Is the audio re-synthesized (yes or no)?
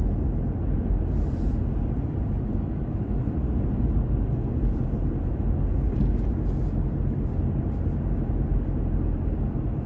no